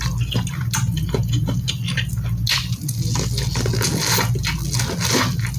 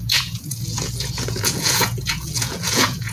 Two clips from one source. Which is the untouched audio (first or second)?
first